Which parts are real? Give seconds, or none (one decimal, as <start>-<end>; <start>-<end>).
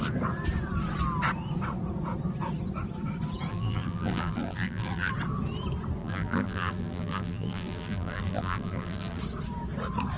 0.0-3.5; 5.1-6.0; 9.2-10.2